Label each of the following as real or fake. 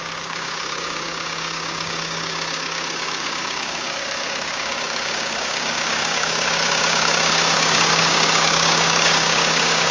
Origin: fake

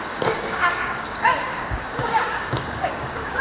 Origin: fake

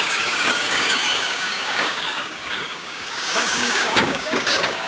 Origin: fake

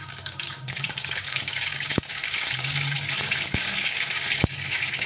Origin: fake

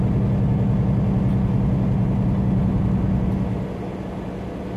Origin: real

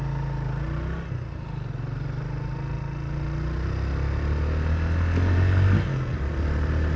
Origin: real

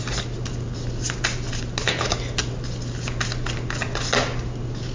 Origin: real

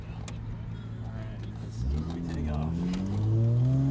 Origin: real